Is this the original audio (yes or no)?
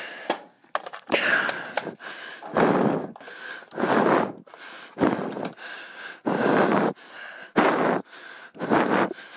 yes